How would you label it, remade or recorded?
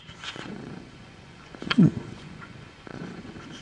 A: remade